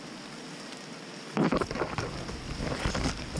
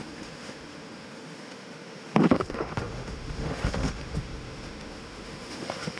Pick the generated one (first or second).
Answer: second